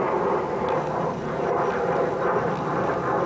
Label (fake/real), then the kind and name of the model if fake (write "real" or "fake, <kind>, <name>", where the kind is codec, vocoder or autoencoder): real